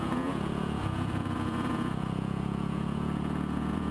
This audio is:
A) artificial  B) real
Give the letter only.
A